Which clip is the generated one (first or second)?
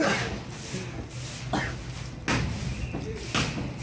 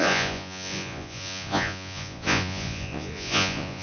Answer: second